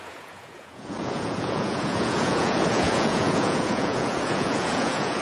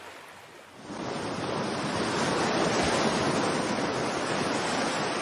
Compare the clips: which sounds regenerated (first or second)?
first